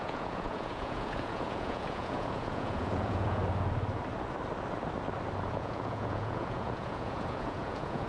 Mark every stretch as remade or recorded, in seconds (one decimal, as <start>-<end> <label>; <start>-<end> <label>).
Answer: 0.0-3.4 remade; 3.4-5.5 recorded; 5.5-8.1 remade